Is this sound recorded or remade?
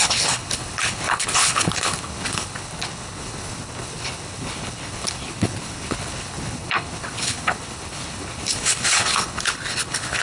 remade